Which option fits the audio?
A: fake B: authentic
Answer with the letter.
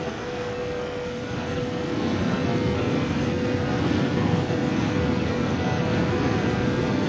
A